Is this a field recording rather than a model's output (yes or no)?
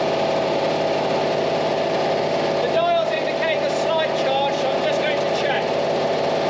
yes